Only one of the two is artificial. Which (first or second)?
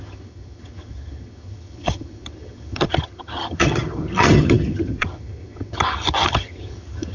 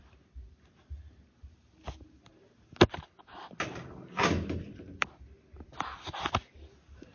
first